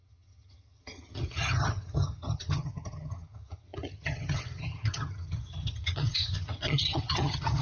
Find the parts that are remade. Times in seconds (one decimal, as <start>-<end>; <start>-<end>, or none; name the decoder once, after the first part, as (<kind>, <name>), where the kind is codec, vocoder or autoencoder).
0.0-7.6 (vocoder, HiFi-GAN)